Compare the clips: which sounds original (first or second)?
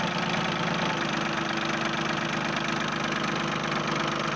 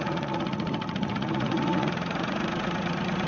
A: first